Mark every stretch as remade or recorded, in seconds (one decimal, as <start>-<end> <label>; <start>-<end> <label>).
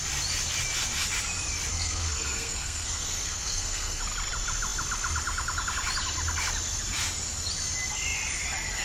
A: 0.0-1.7 recorded; 1.7-4.0 remade; 4.0-8.8 recorded